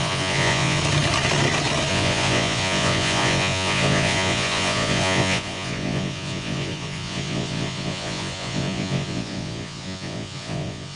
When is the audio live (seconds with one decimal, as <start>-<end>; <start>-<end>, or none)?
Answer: 0.8-1.9